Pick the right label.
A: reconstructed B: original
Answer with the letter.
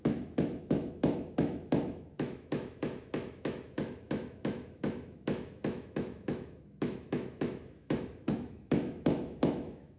A